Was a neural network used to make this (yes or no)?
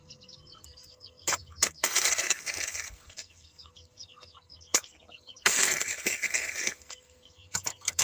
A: yes